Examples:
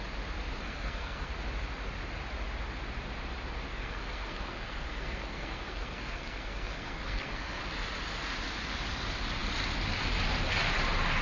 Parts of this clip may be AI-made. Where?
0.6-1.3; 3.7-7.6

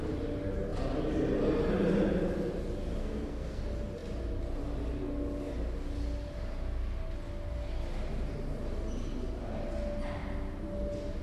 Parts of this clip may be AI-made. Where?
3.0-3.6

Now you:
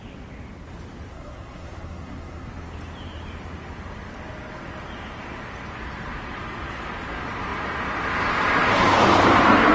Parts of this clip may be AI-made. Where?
1.1-2.5

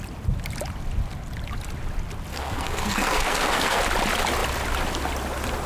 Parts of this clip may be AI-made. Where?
2.3-3.8

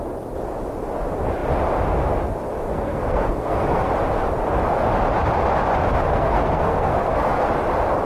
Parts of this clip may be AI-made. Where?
2.7-3.9; 6.1-7.5